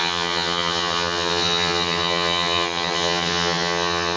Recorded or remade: remade